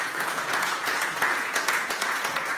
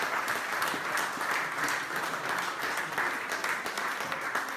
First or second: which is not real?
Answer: first